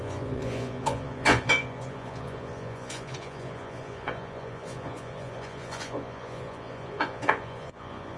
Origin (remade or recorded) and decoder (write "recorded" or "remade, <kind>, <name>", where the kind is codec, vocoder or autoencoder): remade, vocoder, Vocos